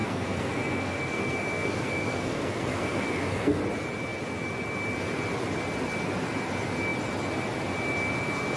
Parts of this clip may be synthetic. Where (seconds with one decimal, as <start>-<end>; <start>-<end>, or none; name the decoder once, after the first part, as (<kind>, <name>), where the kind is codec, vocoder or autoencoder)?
0.0-3.6 (codec, SNAC)